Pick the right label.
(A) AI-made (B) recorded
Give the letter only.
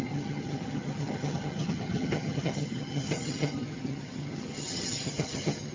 A